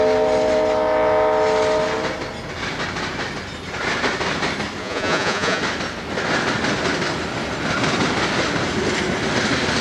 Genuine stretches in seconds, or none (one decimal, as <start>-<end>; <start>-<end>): 0.0-4.8; 5.6-9.8